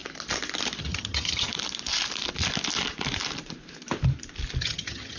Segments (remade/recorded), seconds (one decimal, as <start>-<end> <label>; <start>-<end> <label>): 0.0-0.8 recorded; 0.8-1.5 remade; 1.5-4.6 recorded; 4.6-5.2 remade